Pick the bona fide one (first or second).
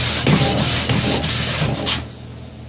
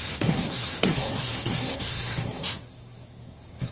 first